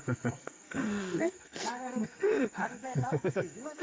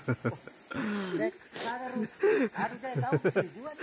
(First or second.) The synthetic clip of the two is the first